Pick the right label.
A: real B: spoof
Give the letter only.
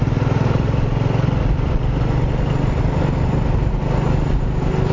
A